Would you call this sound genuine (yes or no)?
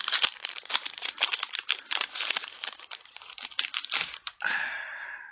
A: no